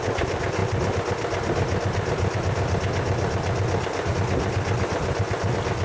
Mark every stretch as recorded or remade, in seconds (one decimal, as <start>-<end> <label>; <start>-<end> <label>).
0.0-5.8 recorded